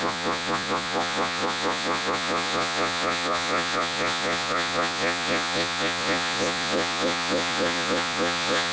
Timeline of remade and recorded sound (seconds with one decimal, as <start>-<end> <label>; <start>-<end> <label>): 0.0-8.7 remade

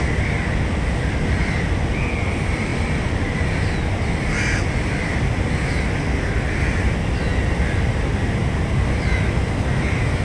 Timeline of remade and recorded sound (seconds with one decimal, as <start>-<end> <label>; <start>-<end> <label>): 0.0-10.2 recorded

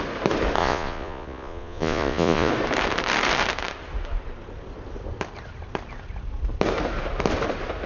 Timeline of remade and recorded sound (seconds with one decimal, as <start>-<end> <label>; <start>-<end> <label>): 0.0-0.6 recorded; 0.6-2.5 remade; 2.5-7.9 recorded

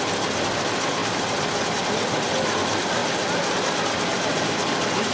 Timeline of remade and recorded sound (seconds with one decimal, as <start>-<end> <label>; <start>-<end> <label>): 0.0-5.1 recorded

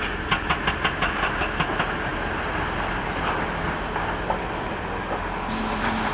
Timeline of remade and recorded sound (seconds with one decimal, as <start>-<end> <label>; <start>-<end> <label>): 0.0-6.1 recorded

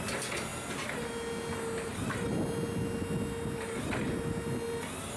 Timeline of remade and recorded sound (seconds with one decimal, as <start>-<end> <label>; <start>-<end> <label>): 0.0-5.2 recorded

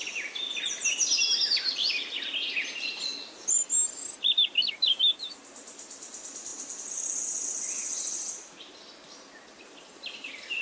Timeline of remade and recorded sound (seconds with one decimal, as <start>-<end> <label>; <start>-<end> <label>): 0.0-10.6 recorded

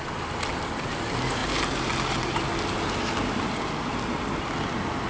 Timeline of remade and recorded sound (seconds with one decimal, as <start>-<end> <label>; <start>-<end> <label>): 0.0-5.1 recorded